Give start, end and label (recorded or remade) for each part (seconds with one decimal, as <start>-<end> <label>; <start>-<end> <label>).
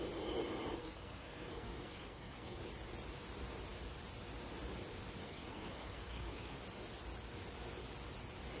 0.0-0.8 recorded; 0.8-2.6 remade; 2.6-5.2 recorded; 5.2-6.6 remade; 6.6-8.6 recorded